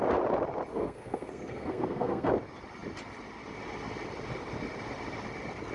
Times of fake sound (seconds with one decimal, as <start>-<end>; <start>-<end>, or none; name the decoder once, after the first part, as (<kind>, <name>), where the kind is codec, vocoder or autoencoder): 0.7-2.3 (codec, SNAC)